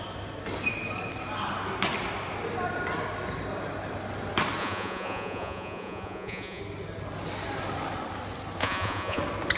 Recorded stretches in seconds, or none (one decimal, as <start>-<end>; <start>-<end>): 0.0-4.6; 6.6-8.6; 9.2-9.6